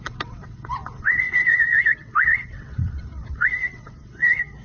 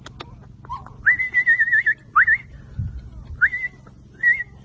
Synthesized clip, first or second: first